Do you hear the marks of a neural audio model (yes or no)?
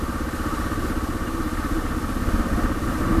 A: no